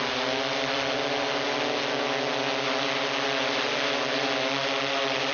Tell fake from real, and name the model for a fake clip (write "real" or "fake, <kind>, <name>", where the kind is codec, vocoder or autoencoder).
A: real